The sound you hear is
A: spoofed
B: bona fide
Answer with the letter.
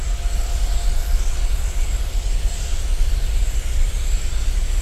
B